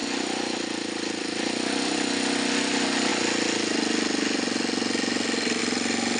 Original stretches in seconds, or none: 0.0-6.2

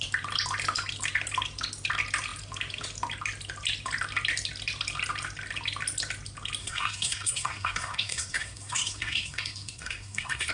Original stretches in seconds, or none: 0.0-6.6

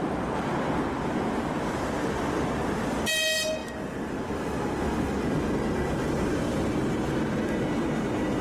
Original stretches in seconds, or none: 0.0-8.4